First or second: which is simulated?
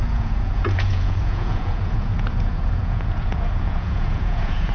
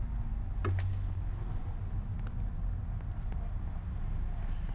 first